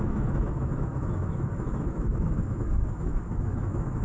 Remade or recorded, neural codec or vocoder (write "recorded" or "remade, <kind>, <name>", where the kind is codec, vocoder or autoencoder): remade, autoencoder, DAC-VAE